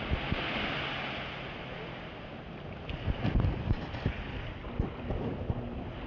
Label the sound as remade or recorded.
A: recorded